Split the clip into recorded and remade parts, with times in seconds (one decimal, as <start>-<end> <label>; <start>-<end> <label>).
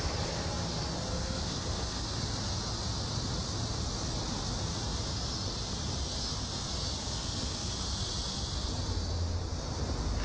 0.0-1.1 recorded; 1.1-2.2 remade; 2.2-7.0 recorded; 7.0-7.7 remade; 7.7-10.2 recorded